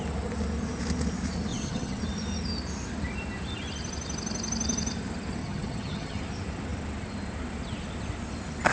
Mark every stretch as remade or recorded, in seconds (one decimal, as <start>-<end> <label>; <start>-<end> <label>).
0.0-1.5 recorded; 1.5-2.0 remade; 2.0-5.4 recorded; 5.4-6.2 remade; 6.2-8.7 recorded

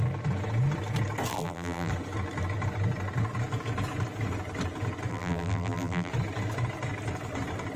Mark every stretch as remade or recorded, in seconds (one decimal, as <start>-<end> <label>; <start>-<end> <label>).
0.0-1.3 recorded; 1.3-1.9 remade; 1.9-5.1 recorded; 5.1-6.1 remade; 6.1-7.8 recorded